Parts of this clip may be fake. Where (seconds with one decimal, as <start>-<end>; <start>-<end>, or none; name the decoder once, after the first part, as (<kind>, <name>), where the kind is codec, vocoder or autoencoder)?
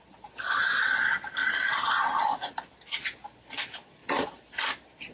1.4-2.7 (vocoder, BigVGAN v2); 4.0-4.5